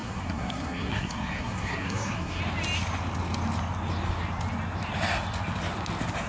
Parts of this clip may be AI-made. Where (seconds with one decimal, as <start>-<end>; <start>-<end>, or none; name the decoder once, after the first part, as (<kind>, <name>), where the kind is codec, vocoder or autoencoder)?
0.0-2.4 (codec, SNAC)